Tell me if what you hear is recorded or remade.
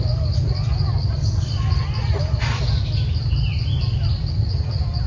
recorded